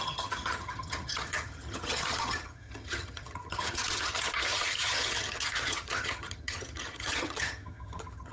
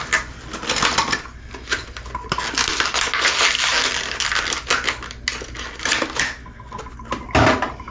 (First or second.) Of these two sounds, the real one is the second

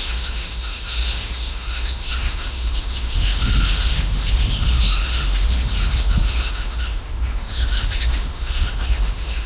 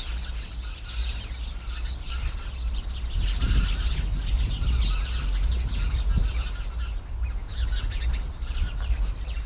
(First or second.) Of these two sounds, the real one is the second